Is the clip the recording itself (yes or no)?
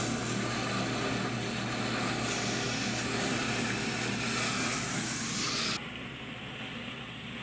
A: yes